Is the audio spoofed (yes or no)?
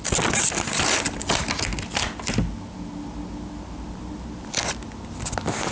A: no